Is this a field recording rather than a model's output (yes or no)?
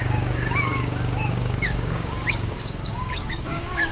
no